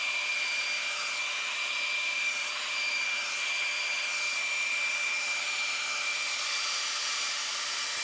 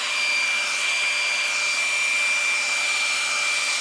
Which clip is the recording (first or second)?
second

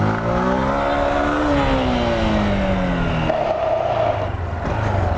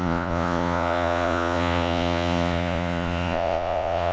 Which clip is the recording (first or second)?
first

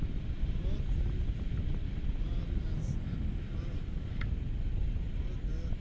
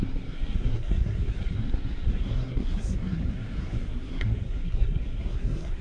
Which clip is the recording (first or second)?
first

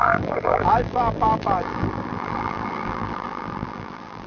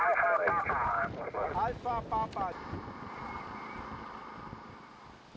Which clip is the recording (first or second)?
second